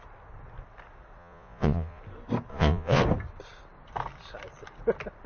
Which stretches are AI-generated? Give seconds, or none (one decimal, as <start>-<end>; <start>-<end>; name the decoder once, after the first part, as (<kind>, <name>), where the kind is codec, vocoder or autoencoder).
1.2-2.0 (vocoder, Vocos); 2.5-3.0